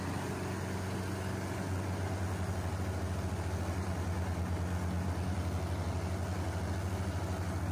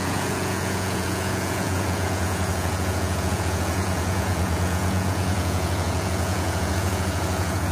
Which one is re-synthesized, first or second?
second